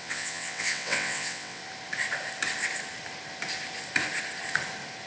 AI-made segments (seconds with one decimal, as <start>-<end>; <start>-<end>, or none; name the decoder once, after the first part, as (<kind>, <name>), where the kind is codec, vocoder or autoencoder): 0.0-1.6 (vocoder, WaveNeXt)